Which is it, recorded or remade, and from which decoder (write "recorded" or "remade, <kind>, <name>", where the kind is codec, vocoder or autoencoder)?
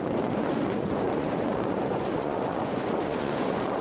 remade, vocoder, Vocos